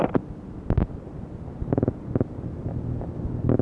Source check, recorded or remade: recorded